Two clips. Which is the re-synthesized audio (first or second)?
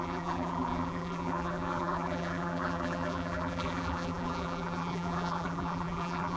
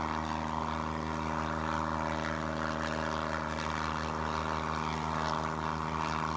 first